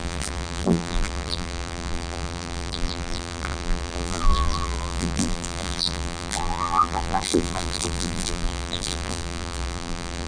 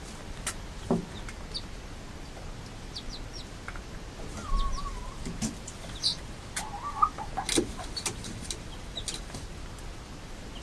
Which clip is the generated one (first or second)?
first